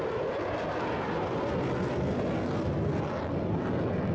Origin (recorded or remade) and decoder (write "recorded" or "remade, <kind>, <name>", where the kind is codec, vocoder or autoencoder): recorded